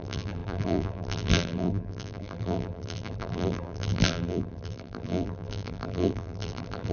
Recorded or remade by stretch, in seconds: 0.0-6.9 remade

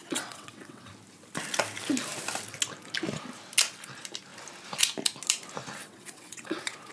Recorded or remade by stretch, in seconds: 0.0-0.9 remade; 0.9-5.8 recorded; 5.8-6.9 remade

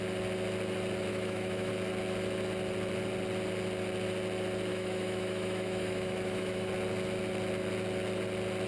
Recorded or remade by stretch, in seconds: 0.0-1.1 recorded; 1.1-1.7 remade; 1.7-4.7 recorded; 4.7-6.7 remade; 6.7-8.7 recorded